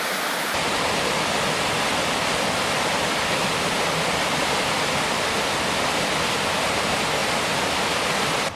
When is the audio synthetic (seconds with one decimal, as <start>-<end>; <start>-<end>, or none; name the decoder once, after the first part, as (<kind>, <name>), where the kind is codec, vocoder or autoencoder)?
none